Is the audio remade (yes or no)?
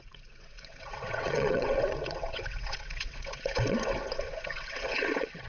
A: yes